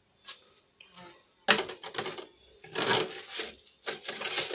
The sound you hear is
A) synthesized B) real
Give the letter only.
B